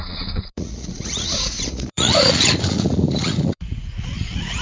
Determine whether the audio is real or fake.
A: fake